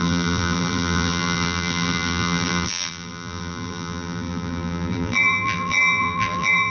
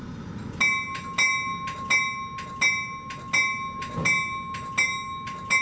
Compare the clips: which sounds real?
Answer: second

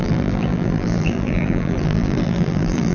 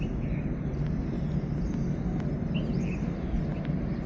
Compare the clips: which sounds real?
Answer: second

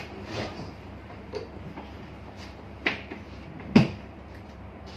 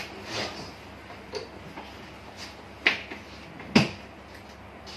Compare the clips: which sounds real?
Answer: second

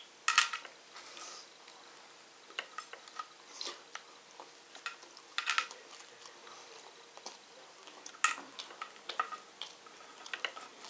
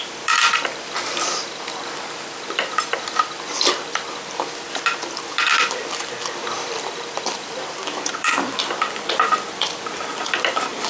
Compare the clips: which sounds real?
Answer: first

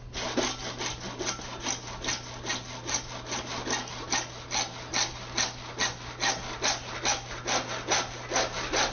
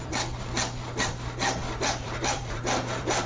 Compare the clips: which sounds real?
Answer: first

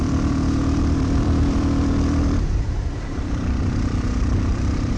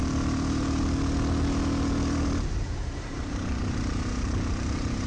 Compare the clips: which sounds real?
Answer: second